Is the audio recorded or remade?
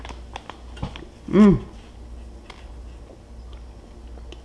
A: recorded